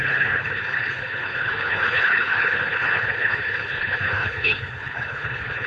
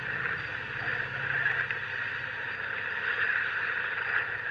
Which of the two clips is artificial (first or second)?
first